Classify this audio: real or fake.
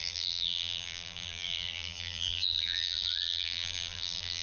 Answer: fake